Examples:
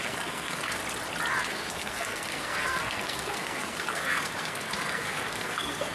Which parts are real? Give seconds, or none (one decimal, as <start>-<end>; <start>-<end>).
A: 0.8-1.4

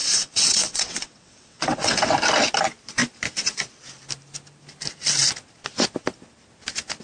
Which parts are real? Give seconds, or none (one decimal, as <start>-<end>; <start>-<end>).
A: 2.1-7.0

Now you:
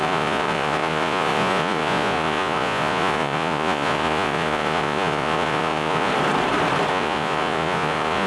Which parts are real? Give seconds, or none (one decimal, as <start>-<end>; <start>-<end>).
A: 6.1-6.9

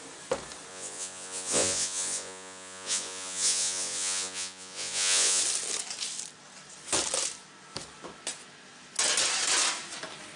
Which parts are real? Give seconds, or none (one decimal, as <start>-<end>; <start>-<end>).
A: 0.0-0.7; 5.4-10.4